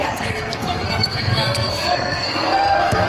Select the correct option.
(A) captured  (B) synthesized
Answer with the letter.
B